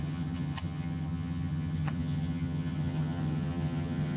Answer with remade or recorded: remade